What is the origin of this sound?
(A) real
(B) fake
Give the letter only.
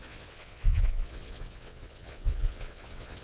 B